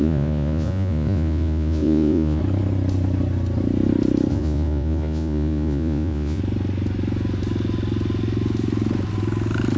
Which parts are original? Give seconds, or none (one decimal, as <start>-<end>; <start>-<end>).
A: 2.4-4.3; 6.4-9.8